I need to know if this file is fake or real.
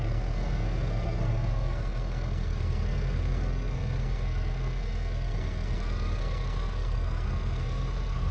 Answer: fake